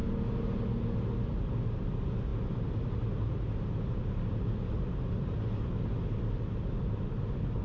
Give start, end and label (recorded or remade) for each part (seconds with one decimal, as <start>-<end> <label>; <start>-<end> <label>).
0.0-7.6 recorded